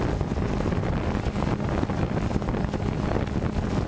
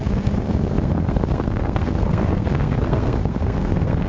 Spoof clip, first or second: second